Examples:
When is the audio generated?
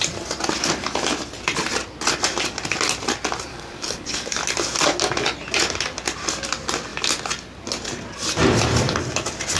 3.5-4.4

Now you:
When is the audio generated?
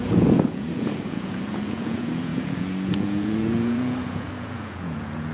0.0-5.3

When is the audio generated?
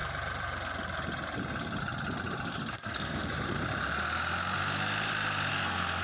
2.7-3.2; 5.5-6.0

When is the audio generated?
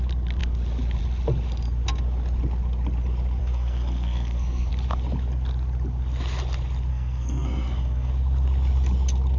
3.4-4.7; 6.9-8.1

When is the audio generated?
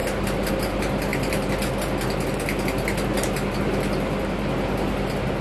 none